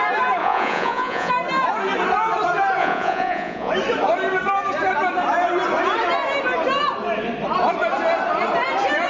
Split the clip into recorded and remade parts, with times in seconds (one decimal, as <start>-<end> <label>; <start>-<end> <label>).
0.0-0.4 recorded; 0.4-1.3 remade; 1.3-2.8 recorded; 2.8-3.7 remade; 3.7-9.1 recorded